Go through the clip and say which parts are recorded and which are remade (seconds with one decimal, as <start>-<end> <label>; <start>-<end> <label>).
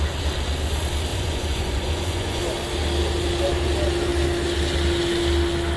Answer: 0.0-1.1 recorded; 1.1-2.4 remade; 2.4-5.8 recorded